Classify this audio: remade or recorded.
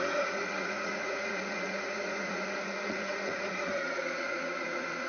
remade